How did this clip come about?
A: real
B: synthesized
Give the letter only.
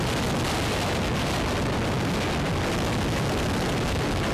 A